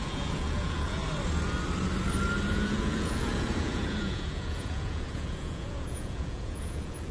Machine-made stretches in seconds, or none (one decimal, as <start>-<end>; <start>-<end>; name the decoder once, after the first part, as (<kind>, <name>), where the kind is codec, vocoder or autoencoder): 0.0-1.0 (vocoder, Vocos); 2.5-7.1